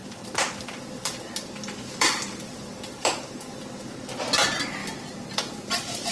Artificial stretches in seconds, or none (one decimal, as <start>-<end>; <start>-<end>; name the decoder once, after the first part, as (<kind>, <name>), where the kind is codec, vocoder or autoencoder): 0.0-3.3 (vocoder, BigVGAN v2); 4.8-6.1